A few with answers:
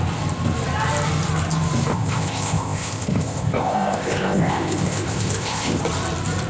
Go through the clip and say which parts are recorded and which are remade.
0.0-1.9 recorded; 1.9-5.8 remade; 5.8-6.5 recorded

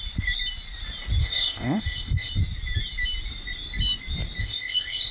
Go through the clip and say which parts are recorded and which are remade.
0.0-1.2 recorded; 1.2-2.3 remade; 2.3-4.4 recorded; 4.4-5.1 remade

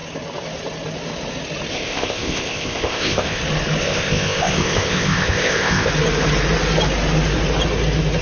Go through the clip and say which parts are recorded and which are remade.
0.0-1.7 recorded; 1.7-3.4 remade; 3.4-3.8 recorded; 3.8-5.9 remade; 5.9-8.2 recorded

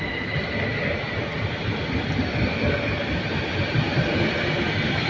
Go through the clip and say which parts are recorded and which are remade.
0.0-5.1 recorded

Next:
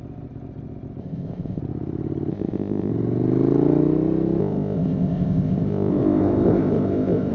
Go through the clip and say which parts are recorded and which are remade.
0.0-1.0 recorded; 1.0-1.6 remade; 1.6-2.3 recorded; 2.3-2.9 remade; 2.9-4.4 recorded; 4.4-7.3 remade